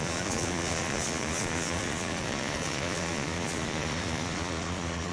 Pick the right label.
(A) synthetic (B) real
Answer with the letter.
A